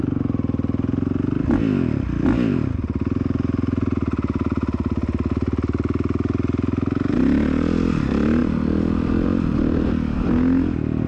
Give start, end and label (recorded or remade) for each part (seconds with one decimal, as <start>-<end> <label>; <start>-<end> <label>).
0.0-11.1 recorded